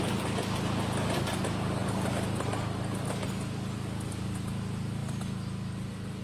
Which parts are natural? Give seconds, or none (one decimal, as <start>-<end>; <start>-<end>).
0.0-6.2

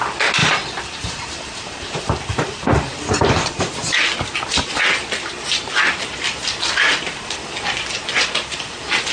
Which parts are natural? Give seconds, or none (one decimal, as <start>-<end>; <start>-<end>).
0.0-0.4; 3.6-6.4; 7.4-9.1

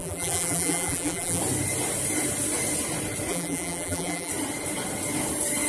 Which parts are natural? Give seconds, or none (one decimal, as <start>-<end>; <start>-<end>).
1.4-3.3; 4.3-5.7